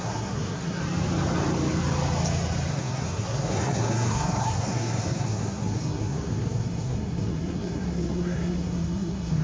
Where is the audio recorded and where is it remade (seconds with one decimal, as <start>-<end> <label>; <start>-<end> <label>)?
0.0-0.8 remade; 0.8-2.7 recorded; 2.7-9.4 remade